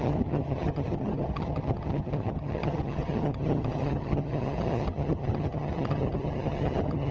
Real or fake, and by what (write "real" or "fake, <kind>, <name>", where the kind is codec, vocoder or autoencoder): fake, vocoder, HiFi-GAN